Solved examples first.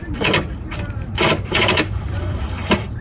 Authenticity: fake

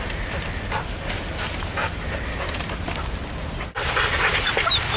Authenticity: real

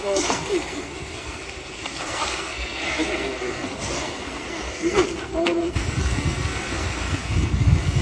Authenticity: fake